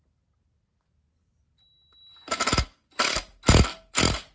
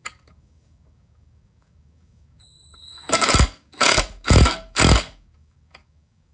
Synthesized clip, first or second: second